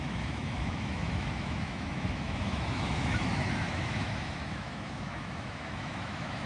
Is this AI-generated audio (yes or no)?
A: yes